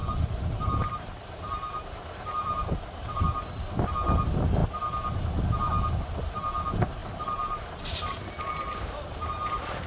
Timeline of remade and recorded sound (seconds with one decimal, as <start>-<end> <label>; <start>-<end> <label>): 0.0-3.2 remade; 3.2-9.9 recorded